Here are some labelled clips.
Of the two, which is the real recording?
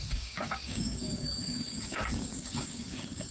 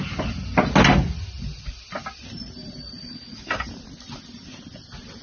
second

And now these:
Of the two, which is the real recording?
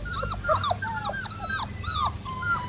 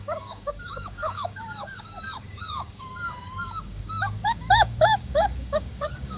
first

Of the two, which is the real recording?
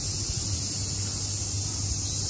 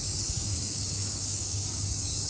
first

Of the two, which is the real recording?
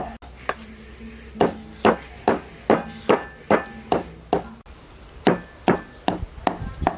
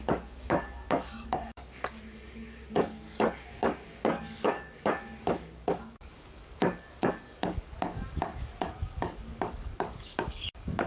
first